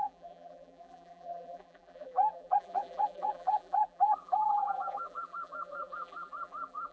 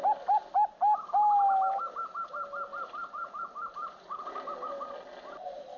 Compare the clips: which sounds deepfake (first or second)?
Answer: first